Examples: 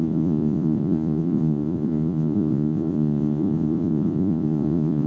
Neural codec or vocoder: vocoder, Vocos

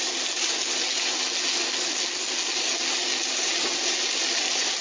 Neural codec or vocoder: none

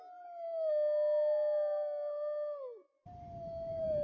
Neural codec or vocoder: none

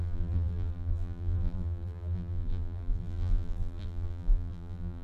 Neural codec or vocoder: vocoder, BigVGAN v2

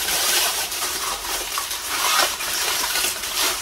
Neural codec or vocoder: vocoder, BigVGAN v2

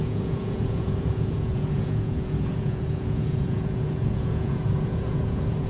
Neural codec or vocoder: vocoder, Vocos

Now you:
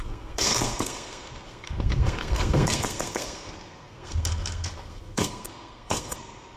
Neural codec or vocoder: codec, SNAC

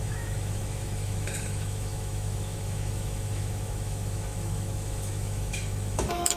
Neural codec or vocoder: autoencoder, DAC-VAE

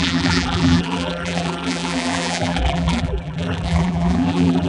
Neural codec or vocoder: vocoder, BigVGAN v2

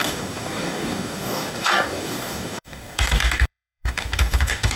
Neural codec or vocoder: codec, DAC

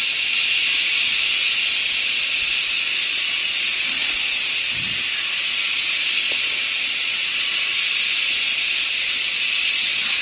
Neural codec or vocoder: vocoder, Vocos